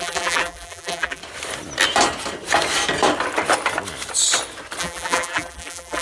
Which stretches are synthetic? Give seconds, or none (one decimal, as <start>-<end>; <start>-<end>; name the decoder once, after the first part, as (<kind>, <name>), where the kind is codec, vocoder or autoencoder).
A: 0.0-1.2 (vocoder, BigVGAN v2); 4.8-6.0